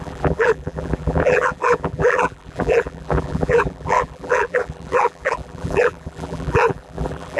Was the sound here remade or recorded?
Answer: remade